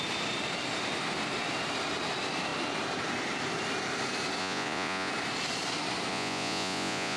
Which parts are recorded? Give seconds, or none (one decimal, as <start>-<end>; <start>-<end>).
0.0-4.4; 5.1-6.1